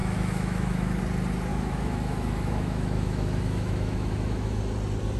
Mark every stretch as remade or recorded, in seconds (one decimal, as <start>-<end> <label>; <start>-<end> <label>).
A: 0.0-1.0 remade; 1.0-1.5 recorded; 1.5-4.6 remade; 4.6-5.2 recorded